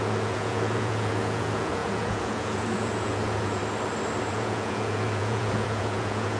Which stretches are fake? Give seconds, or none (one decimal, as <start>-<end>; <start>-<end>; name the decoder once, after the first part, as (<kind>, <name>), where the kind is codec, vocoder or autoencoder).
0.0-3.6 (vocoder, Vocos); 4.2-6.4